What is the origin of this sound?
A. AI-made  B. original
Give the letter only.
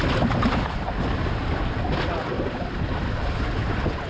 B